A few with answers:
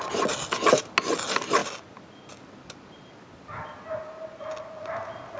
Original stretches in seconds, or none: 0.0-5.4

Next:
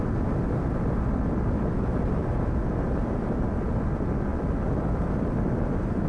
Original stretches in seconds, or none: 0.0-6.1

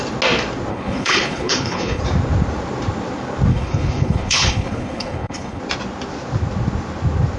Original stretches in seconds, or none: 0.0-0.7; 2.0-3.5; 5.6-7.4

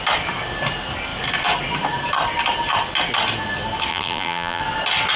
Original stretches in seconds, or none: 0.0-3.9; 4.6-5.2

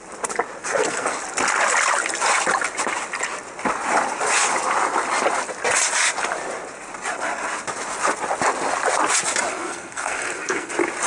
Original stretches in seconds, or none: 0.0-0.6; 1.2-9.5; 10.7-11.1

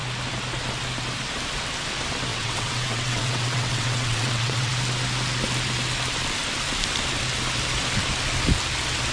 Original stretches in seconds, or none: 0.0-2.3; 4.7-9.1